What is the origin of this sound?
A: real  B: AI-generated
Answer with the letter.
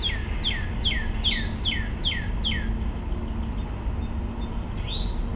A